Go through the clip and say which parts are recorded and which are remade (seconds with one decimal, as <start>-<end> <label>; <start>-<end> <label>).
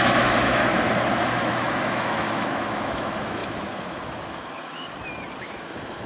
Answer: 0.0-0.6 remade; 0.6-1.2 recorded; 1.2-4.9 remade; 4.9-5.4 recorded; 5.4-6.1 remade